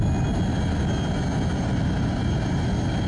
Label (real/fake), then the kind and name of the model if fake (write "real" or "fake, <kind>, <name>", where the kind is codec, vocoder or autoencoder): real